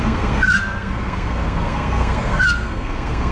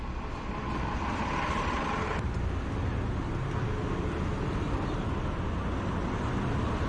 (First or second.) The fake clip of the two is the first